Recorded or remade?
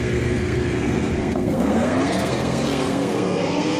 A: remade